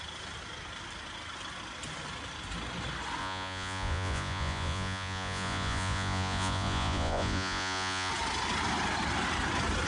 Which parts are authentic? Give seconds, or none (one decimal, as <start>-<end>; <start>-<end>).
0.0-3.2; 8.1-9.9